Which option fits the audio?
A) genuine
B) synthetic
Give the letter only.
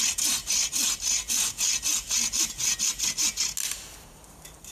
A